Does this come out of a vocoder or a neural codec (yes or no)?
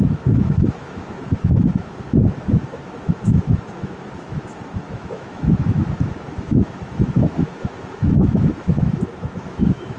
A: yes